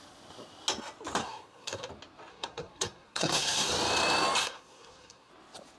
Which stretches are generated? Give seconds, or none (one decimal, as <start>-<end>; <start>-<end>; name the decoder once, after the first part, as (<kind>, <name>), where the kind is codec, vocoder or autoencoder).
1.2-1.9 (codec, SNAC); 2.3-3.7; 4.4-5.3